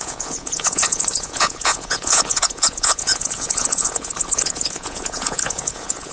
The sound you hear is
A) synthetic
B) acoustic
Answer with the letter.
A